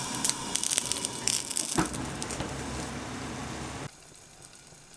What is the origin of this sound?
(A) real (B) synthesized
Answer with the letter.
A